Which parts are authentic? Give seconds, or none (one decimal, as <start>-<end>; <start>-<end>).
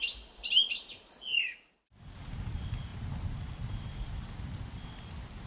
0.0-5.5